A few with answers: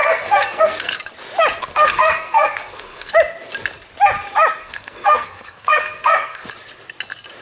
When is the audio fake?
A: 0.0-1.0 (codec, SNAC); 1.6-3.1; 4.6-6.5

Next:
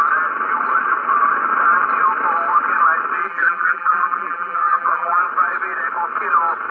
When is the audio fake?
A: 3.2-5.2 (vocoder, BigVGAN v2)

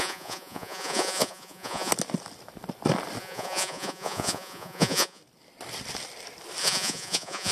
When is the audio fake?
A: 0.0-1.9 (vocoder, Vocos); 3.2-5.2; 6.6-7.5

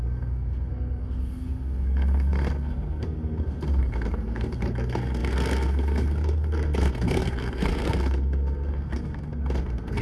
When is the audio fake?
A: 0.0-10.0 (codec, SNAC)

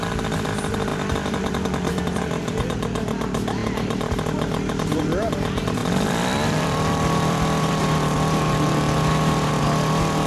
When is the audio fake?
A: 0.9-2.2 (vocoder, BigVGAN v2); 5.8-7.8

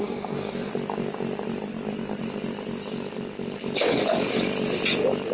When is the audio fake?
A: 0.0-0.7 (codec, DAC)